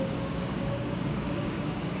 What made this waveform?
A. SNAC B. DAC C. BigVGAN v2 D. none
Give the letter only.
B